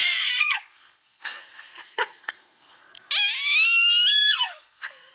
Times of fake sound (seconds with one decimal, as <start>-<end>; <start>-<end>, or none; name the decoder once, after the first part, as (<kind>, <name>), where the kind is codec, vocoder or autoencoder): 0.0-3.1 (codec, SNAC); 4.1-5.1